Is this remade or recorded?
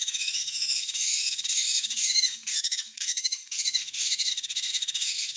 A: remade